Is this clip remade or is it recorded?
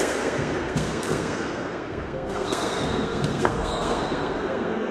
remade